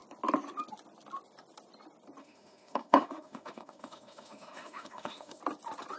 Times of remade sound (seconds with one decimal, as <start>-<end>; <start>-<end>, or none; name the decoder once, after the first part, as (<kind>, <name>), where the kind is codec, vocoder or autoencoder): 2.2-5.4 (autoencoder, DAC-VAE)